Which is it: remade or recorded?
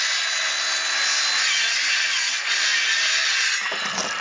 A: recorded